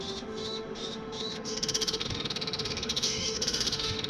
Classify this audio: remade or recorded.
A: remade